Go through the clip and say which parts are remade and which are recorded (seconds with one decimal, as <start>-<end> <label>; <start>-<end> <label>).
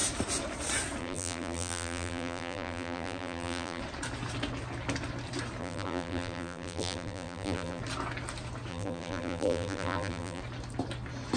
0.0-1.0 recorded; 1.0-3.8 remade; 3.8-5.6 recorded; 5.6-7.8 remade; 7.8-8.7 recorded; 8.7-10.4 remade; 10.4-11.4 recorded